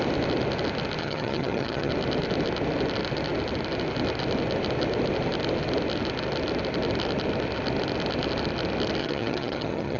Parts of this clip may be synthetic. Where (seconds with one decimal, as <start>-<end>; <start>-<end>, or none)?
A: 1.0-1.9; 9.0-10.0